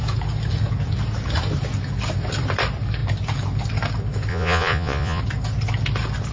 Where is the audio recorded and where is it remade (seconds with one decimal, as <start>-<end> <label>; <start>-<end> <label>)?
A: 0.0-4.3 recorded; 4.3-5.2 remade; 5.2-6.3 recorded